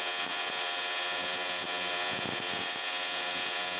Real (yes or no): no